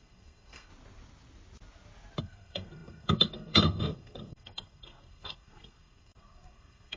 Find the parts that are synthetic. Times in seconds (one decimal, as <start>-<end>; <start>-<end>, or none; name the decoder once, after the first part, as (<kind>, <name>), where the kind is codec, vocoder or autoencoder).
0.0-0.7 (codec, SNAC); 2.2-7.0